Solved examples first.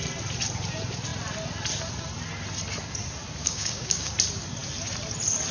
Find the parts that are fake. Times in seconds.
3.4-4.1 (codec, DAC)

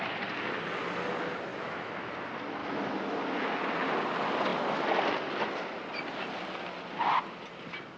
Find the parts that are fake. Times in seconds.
1.5-2.1 (autoencoder, DAC-VAE); 2.6-3.2

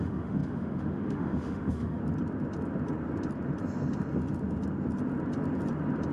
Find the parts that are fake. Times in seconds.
0.0-2.0 (autoencoder, DAC-VAE)

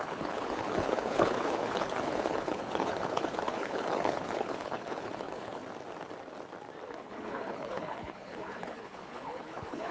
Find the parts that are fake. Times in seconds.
0.0-5.6 (codec, HILCodec); 6.9-9.9

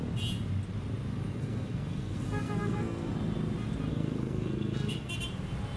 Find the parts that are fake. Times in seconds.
1.3-3.1 (codec, SNAC); 3.9-5.1

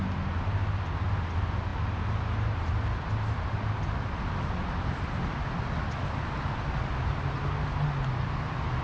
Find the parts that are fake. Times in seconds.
none

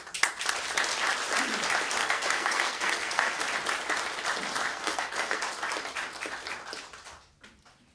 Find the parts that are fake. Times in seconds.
2.0-3.4 (codec, SNAC); 4.7-5.4

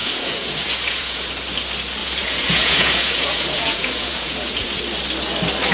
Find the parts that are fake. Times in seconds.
0.0-1.3 (vocoder, Vocos); 2.0-4.8